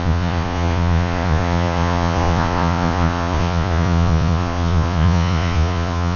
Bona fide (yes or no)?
no